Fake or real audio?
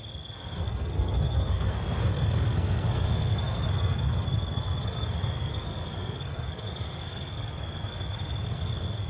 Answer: fake